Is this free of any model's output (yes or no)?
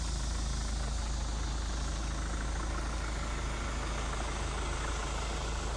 yes